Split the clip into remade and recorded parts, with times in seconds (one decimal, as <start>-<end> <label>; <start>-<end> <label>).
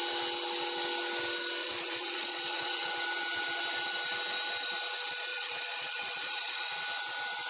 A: 0.0-1.6 recorded; 1.6-2.9 remade; 2.9-5.3 recorded; 5.3-6.7 remade; 6.7-7.5 recorded